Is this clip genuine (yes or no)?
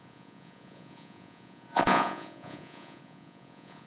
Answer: no